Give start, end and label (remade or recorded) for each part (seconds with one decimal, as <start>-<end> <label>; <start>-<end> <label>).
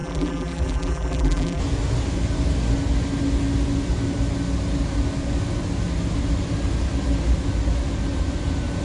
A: 0.0-1.6 remade; 1.6-8.8 recorded